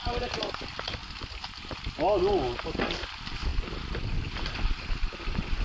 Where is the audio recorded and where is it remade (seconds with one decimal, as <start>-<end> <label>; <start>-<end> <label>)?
0.0-3.5 recorded; 3.5-5.6 remade